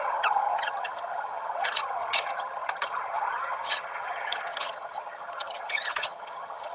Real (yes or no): no